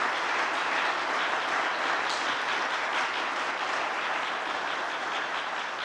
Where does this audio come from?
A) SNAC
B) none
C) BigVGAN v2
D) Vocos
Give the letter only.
B